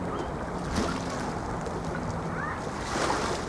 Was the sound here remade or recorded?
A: recorded